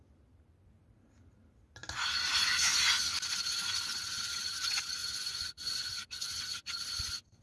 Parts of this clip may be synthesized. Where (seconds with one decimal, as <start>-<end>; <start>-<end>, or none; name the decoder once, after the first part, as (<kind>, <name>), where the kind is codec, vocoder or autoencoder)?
5.0-6.4 (vocoder, Vocos)